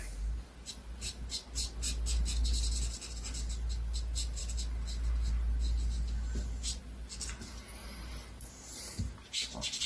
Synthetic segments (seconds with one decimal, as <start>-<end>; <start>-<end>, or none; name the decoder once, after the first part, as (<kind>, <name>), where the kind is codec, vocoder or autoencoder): none